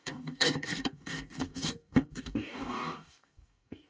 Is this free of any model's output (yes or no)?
no